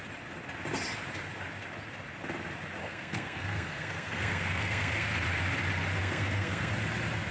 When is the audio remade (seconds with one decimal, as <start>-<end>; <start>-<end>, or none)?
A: 2.8-5.2; 6.0-6.7